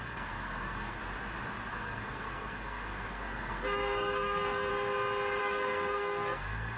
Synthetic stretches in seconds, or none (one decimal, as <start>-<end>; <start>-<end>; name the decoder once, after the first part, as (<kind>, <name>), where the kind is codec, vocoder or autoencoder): 0.0-1.0 (codec, SNAC); 1.7-4.7; 5.4-6.8